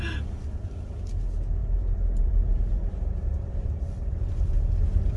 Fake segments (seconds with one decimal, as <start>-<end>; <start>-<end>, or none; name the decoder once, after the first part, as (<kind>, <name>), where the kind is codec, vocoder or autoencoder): 1.6-4.7 (vocoder, BigVGAN v2)